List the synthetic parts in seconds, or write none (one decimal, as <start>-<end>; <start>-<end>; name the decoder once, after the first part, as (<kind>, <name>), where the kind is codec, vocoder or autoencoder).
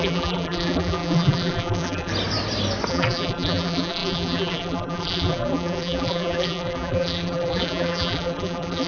0.0-2.1 (vocoder, BigVGAN v2); 2.9-8.9